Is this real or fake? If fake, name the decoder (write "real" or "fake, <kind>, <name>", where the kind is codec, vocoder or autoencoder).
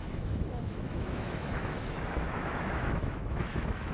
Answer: fake, autoencoder, DAC-VAE